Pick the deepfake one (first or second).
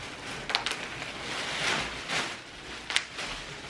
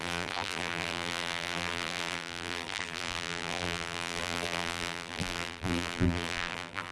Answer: second